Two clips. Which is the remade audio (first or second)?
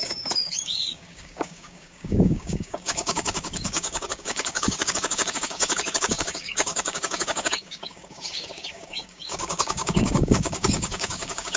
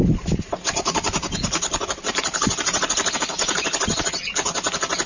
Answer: first